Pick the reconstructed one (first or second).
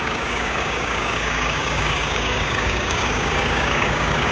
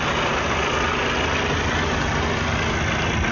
first